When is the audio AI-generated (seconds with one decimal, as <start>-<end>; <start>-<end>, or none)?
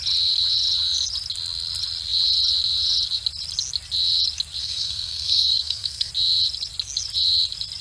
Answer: 4.6-6.1